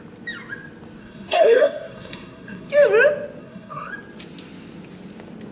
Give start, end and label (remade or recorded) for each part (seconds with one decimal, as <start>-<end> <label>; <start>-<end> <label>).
0.0-1.0 recorded; 1.0-2.7 remade; 2.7-3.4 recorded; 3.4-3.9 remade; 3.9-5.5 recorded

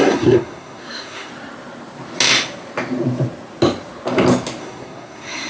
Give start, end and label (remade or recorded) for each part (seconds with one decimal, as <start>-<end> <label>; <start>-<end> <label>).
0.0-1.3 remade; 1.3-4.6 recorded; 4.6-5.5 remade

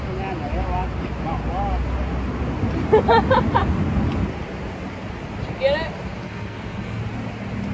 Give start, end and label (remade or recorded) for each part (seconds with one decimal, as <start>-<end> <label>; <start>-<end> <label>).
0.0-6.2 recorded; 6.2-7.0 remade; 7.0-7.7 recorded

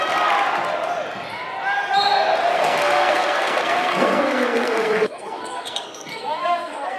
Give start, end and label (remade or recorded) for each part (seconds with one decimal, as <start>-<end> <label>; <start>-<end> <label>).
0.0-2.5 recorded; 2.5-7.0 remade

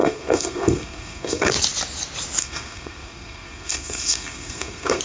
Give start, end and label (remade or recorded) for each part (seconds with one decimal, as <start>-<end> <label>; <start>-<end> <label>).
0.0-1.5 remade; 1.5-2.4 recorded; 2.4-5.0 remade

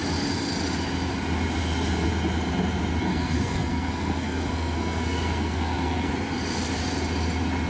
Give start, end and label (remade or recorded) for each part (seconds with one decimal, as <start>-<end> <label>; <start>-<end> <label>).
0.0-3.1 recorded; 3.1-6.1 remade; 6.1-7.7 recorded

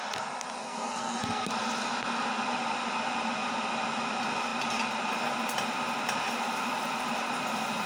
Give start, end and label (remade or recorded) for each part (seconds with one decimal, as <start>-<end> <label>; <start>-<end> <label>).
0.0-0.6 recorded; 0.6-1.5 remade; 1.5-7.9 recorded